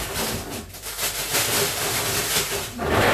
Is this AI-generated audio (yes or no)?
no